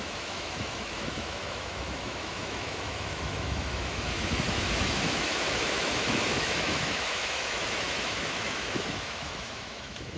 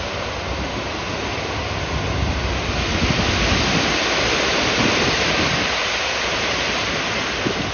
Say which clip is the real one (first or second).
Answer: second